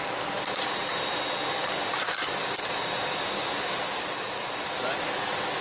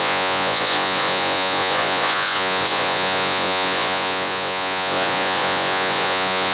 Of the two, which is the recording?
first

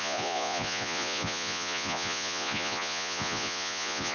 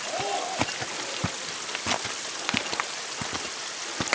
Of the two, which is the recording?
second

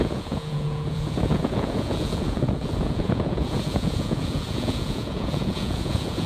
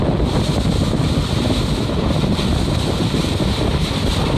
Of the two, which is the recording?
second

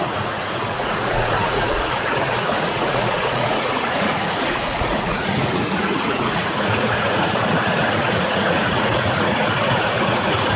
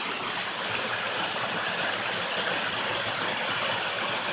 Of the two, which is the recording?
second